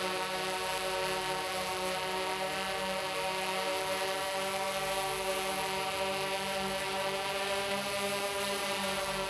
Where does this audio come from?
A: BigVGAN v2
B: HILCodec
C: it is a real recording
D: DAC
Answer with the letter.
C